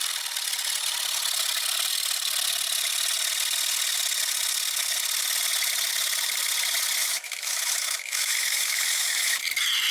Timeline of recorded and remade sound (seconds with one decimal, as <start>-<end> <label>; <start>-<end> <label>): 0.0-7.0 recorded; 7.0-9.4 remade; 9.4-9.9 recorded